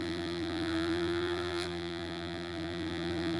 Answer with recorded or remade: remade